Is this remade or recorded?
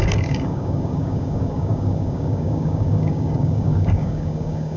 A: remade